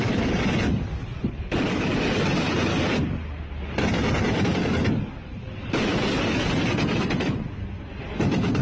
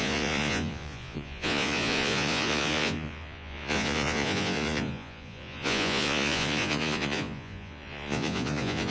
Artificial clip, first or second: second